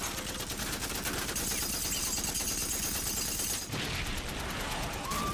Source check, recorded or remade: recorded